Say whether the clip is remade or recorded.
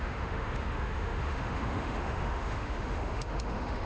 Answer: remade